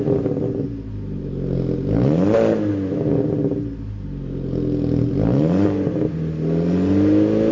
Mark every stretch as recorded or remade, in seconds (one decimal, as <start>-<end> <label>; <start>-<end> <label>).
0.0-7.5 recorded